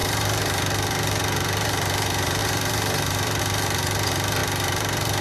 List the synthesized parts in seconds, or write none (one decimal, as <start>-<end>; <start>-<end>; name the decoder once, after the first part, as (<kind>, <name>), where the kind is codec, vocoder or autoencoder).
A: 0.0-5.2 (vocoder, BigVGAN v2)